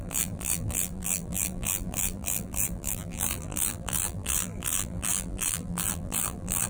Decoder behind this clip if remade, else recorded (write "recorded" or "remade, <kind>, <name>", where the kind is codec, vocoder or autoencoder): remade, vocoder, BigVGAN v2